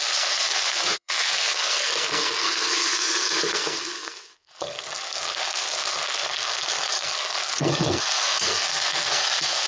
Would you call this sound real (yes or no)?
no